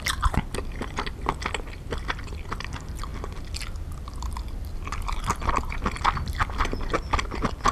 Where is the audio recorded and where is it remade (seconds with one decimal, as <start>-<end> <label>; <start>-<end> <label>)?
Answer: 0.0-7.7 recorded